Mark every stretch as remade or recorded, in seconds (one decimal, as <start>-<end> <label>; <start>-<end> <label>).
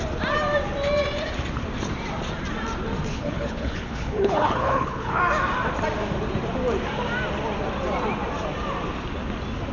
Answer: 0.0-3.1 recorded; 3.1-5.2 remade; 5.2-9.7 recorded